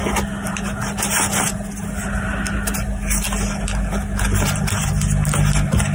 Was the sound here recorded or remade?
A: recorded